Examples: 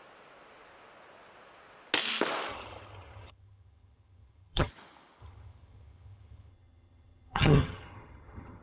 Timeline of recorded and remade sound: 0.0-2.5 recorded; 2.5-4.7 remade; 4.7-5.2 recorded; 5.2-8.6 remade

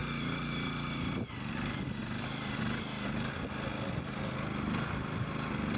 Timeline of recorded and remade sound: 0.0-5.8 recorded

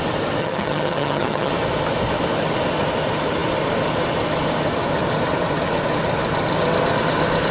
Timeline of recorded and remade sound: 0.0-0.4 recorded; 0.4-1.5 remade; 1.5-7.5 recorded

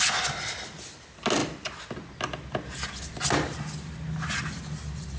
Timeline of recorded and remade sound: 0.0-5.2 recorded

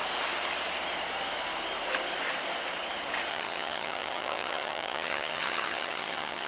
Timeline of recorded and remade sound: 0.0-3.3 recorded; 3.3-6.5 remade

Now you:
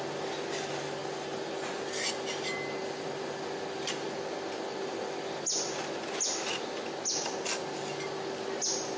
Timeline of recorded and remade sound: 0.0-9.0 recorded